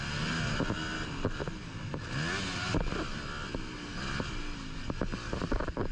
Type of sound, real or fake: real